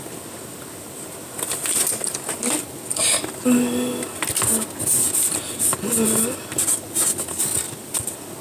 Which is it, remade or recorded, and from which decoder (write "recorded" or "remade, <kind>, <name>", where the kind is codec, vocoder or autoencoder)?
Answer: recorded